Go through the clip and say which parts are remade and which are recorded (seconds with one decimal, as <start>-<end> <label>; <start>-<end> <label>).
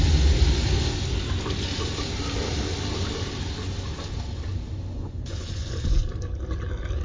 0.0-5.0 recorded; 5.0-6.0 remade; 6.0-7.0 recorded